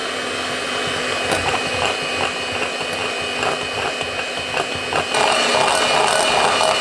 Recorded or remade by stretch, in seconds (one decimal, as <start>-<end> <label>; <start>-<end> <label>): 0.0-6.8 recorded